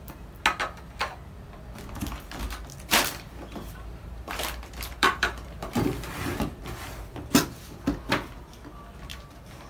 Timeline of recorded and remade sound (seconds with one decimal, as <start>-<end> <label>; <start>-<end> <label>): 0.0-2.9 recorded; 2.9-6.6 remade; 6.6-9.1 recorded; 9.1-9.7 remade